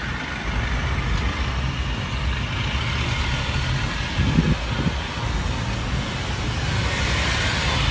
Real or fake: real